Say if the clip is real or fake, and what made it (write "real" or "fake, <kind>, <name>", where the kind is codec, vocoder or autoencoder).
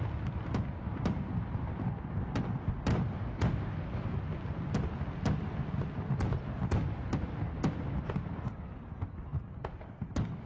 real